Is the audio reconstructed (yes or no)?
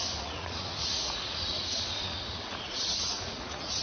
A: yes